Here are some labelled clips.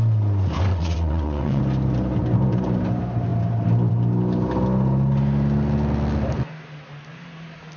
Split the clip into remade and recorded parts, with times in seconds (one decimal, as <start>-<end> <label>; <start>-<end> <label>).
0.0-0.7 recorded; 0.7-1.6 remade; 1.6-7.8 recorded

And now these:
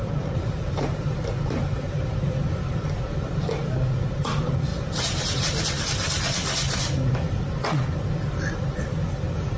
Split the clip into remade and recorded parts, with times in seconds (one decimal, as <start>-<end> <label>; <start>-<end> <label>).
0.0-2.7 remade; 2.7-4.7 recorded; 4.7-5.4 remade; 5.4-9.6 recorded

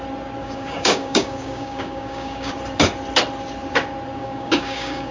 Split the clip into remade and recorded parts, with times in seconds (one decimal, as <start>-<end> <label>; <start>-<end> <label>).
0.0-0.4 recorded; 0.4-2.5 remade; 2.5-4.2 recorded; 4.2-5.1 remade

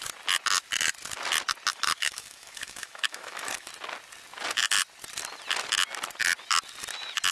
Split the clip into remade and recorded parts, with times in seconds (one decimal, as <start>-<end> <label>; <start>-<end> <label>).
0.0-1.7 recorded; 1.7-3.7 remade; 3.7-7.3 recorded